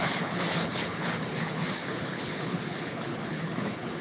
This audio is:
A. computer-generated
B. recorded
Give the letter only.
A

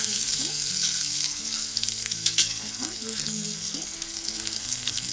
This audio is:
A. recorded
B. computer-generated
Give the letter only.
B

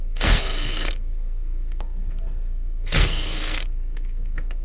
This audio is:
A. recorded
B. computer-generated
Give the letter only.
B